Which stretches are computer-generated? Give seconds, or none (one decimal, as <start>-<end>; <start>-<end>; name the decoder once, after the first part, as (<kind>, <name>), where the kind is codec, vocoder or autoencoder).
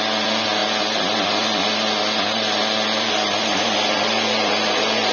none